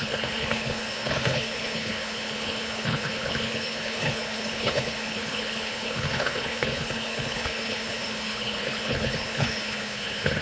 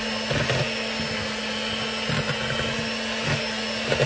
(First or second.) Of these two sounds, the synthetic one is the first